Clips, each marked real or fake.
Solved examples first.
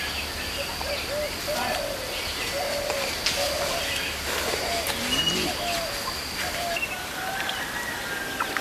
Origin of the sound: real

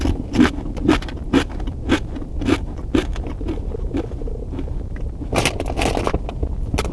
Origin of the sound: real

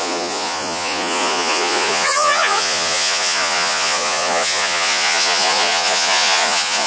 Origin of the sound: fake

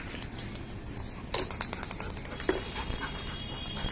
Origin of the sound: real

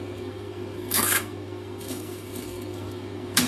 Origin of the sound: fake